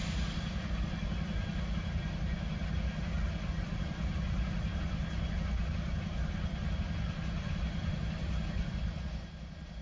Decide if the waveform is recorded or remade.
recorded